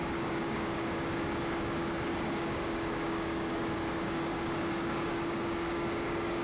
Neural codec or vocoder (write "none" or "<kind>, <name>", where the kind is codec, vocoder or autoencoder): codec, DAC